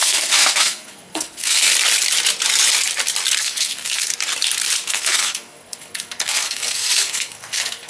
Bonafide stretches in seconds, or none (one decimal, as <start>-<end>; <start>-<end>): 1.7-3.4; 4.1-4.9